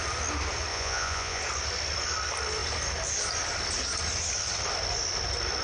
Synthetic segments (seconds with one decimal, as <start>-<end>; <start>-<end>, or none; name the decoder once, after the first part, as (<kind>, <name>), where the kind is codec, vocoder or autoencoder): 0.7-1.4 (vocoder, Vocos)